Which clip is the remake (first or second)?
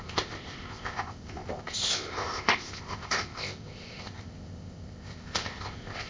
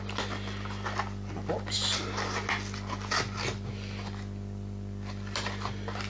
first